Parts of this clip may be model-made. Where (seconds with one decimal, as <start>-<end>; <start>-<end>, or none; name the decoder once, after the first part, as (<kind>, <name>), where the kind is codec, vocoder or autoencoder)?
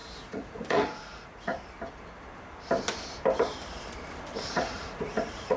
0.0-1.5 (vocoder, Vocos); 4.4-5.6